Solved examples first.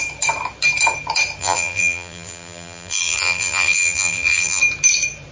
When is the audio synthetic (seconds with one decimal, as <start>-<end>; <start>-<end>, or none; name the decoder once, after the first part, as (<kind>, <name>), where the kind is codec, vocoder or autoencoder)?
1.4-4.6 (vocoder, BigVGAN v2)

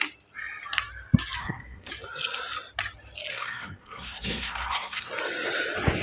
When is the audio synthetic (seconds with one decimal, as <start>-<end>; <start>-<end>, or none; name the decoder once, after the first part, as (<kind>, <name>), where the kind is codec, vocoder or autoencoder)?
1.4-1.9 (codec, SNAC); 3.3-5.1

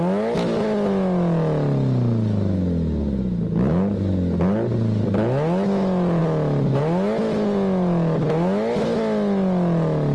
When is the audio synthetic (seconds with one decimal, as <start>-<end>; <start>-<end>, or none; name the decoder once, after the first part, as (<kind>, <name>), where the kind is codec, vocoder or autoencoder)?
none

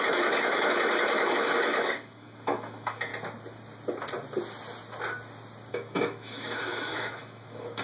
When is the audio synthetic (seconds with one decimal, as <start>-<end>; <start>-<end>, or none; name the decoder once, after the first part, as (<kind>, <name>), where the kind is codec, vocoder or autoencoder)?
0.0-3.1 (autoencoder, DAC-VAE); 5.7-7.8

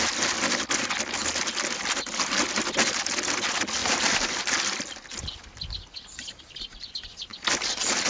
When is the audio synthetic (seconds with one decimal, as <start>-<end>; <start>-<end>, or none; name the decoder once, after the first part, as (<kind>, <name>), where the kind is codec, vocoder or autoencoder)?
3.8-5.2 (vocoder, BigVGAN v2)

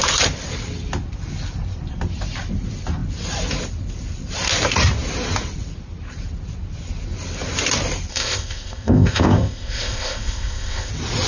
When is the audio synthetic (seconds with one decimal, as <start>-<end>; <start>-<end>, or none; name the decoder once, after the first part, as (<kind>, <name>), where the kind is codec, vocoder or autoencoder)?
8.1-10.9 (codec, ZipCodec)

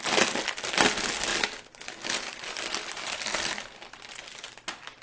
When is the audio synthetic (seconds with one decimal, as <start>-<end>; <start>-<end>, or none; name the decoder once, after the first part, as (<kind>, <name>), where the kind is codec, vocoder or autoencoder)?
none